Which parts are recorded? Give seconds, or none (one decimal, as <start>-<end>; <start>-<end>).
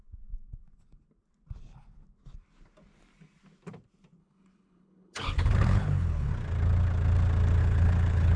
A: 0.0-4.2; 6.3-7.6